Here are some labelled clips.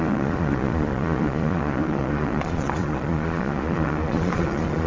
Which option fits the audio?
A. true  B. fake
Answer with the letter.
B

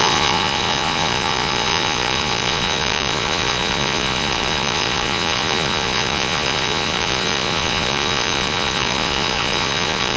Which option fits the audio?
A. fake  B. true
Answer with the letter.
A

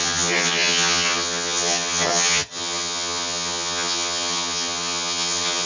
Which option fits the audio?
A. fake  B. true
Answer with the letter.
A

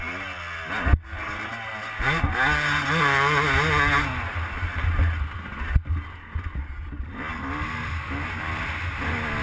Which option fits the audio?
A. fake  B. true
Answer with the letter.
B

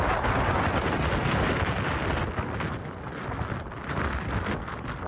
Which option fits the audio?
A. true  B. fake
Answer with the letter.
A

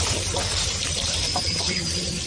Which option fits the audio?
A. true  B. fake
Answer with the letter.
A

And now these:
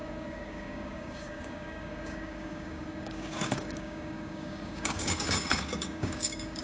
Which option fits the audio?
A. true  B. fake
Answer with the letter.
B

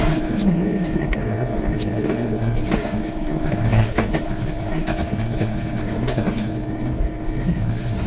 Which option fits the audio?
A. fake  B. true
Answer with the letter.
A